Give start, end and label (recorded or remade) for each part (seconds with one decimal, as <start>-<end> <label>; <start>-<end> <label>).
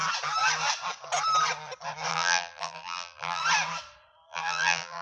0.0-2.1 recorded; 2.1-3.4 remade; 3.4-4.3 recorded; 4.3-5.0 remade